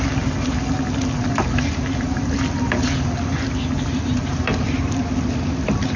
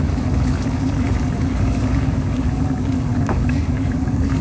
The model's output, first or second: second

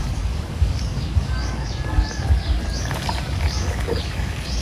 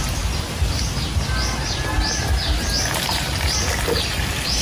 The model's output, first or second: first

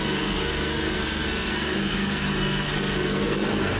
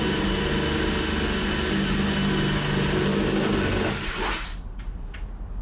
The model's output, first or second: first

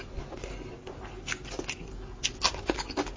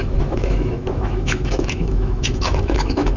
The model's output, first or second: second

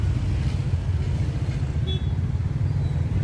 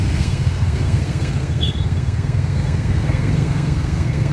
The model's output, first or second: second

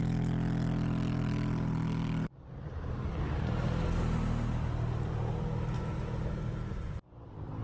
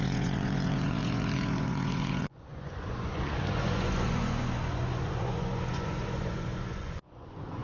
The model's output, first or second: second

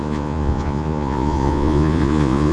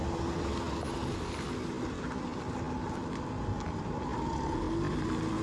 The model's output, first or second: first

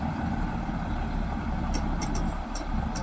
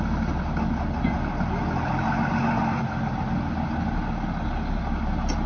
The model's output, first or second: first